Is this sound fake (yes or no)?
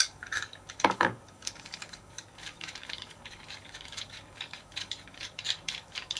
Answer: yes